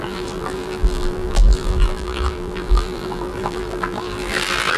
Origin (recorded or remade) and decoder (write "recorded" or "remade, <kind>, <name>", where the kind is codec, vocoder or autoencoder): remade, vocoder, BigVGAN v2